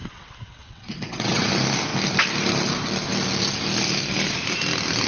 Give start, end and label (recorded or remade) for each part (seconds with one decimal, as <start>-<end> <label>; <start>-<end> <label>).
0.0-1.5 remade; 1.5-5.1 recorded